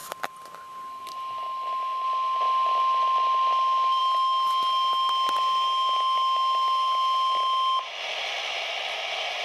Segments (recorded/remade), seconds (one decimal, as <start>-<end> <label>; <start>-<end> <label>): 0.0-9.4 recorded